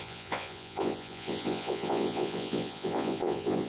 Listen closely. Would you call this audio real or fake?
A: fake